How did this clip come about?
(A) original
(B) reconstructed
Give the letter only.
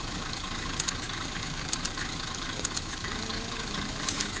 B